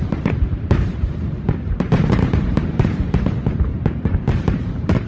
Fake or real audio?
fake